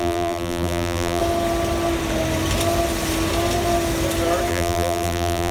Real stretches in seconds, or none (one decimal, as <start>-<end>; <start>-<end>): 1.2-4.5